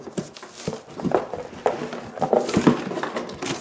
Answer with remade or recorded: recorded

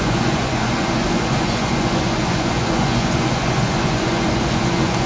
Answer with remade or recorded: remade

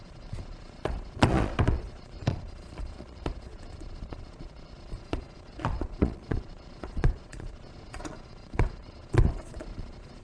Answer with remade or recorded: remade